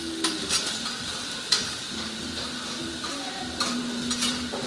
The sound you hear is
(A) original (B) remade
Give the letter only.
A